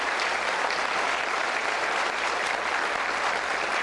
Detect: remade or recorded remade